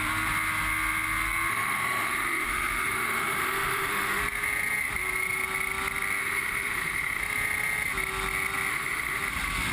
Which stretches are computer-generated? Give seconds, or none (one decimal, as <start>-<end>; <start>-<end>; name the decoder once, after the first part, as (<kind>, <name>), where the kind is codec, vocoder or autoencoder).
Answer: 1.5-4.2 (autoencoder, DAC-VAE); 6.2-7.2; 8.7-9.2